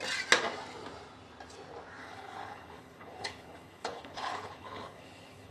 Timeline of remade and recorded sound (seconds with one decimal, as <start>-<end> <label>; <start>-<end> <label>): 0.0-2.0 recorded; 2.0-5.5 remade